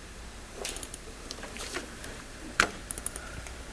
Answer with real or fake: fake